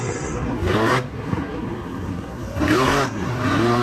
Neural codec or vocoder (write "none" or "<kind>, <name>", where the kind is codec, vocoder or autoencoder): codec, SNAC